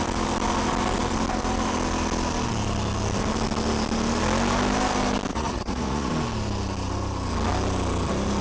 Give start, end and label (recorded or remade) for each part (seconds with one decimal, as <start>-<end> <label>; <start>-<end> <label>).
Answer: 0.0-5.3 recorded; 5.3-6.1 remade; 6.1-8.4 recorded